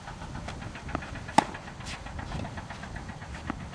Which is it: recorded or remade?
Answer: recorded